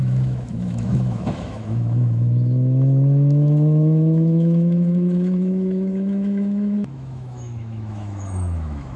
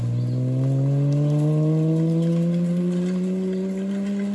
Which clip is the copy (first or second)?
first